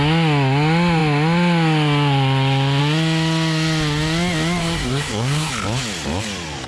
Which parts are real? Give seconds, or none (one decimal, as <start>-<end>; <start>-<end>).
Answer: 0.0-4.6; 5.5-6.7